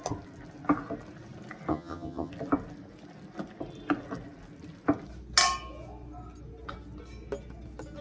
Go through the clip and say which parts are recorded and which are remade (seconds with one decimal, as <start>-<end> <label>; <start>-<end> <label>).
0.0-1.7 recorded; 1.7-2.3 remade; 2.3-8.0 recorded